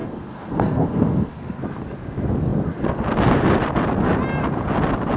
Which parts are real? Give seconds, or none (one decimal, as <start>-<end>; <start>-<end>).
1.6-5.2